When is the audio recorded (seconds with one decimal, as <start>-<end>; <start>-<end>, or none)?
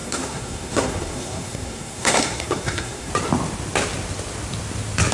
3.1-5.1